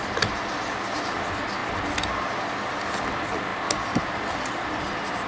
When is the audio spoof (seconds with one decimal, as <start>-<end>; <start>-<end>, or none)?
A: none